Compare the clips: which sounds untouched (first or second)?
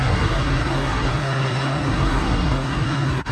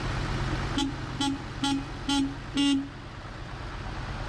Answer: second